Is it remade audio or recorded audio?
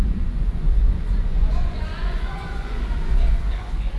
remade